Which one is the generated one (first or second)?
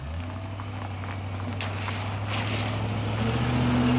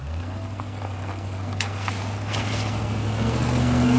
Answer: second